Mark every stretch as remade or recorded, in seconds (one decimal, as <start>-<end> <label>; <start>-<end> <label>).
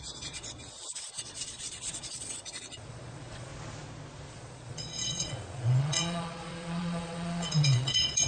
0.0-3.5 remade; 3.5-4.3 recorded; 4.3-8.3 remade